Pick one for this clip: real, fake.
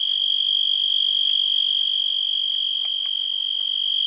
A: real